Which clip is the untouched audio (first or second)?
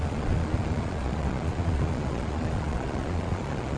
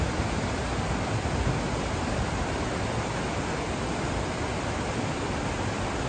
second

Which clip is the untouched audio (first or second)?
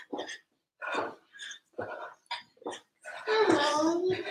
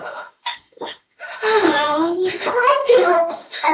first